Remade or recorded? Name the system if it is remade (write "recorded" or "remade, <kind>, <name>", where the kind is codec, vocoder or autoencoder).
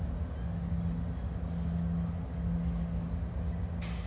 recorded